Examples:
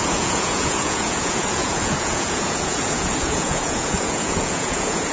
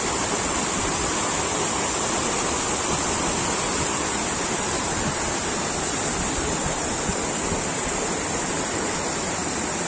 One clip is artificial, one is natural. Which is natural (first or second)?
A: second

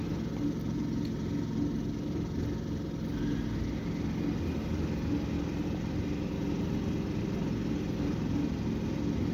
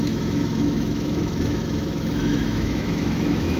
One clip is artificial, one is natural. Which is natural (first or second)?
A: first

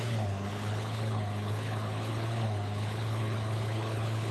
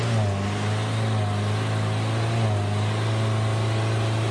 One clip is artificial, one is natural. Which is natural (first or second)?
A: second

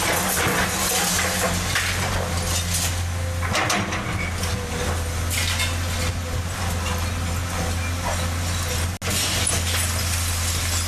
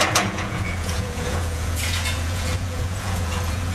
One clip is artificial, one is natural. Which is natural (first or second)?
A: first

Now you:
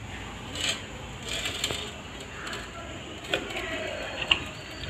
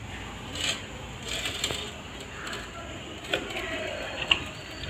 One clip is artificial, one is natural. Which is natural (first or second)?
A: first